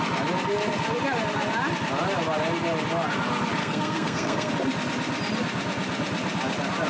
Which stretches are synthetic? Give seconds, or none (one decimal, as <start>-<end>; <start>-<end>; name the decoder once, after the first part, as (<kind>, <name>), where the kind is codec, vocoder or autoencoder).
3.6-4.5 (codec, SNAC)

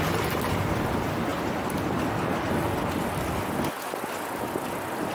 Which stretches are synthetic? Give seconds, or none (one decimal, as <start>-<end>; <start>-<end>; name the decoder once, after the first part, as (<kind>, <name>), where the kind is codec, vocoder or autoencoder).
none